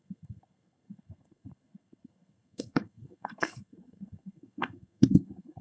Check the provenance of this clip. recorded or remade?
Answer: remade